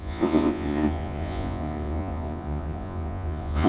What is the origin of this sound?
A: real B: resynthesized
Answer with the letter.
B